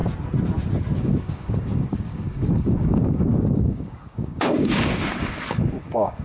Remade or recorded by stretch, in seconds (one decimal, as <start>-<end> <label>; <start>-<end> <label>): 0.0-1.0 recorded; 1.0-6.2 remade